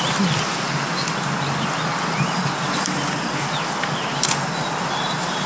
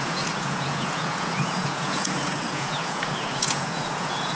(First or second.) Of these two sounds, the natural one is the first